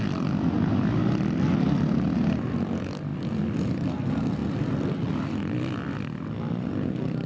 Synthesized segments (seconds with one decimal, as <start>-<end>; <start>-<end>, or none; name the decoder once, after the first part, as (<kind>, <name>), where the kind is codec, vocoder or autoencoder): 3.1-3.9 (vocoder, BigVGAN v2)